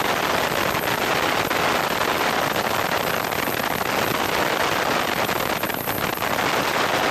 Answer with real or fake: real